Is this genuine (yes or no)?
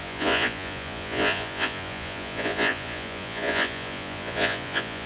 no